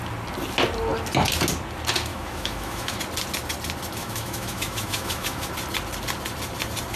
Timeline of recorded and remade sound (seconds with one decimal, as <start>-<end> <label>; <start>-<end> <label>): 0.0-2.1 recorded; 2.1-3.0 remade; 3.0-4.0 recorded; 4.0-5.5 remade; 5.5-7.0 recorded